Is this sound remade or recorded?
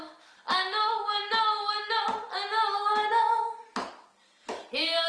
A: recorded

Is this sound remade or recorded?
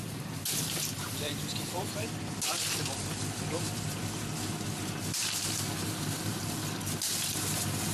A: recorded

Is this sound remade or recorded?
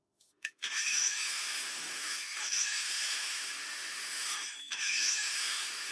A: remade